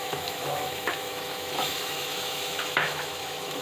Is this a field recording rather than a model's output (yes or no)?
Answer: no